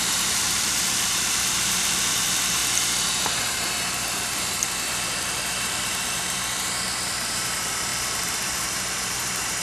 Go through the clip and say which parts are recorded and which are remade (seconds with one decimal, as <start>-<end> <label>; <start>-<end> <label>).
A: 0.0-2.6 remade; 2.6-3.2 recorded; 3.2-9.6 remade